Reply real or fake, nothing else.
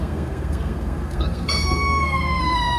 fake